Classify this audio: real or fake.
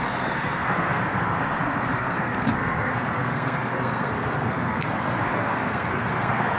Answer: fake